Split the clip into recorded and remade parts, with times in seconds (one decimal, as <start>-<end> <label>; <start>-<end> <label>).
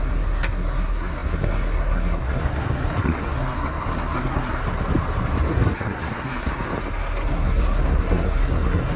0.0-4.6 remade; 4.6-5.4 recorded; 5.4-6.5 remade; 6.5-7.3 recorded; 7.3-9.0 remade